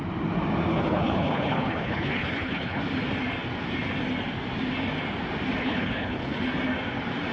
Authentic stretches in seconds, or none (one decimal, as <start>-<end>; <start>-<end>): 0.0-0.7; 2.8-5.6; 6.4-7.3